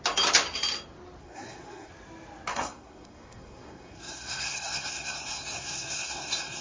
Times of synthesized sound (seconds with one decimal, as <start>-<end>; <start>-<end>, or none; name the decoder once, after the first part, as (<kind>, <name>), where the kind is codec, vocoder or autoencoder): 1.2-1.9 (codec, SNAC); 2.5-6.6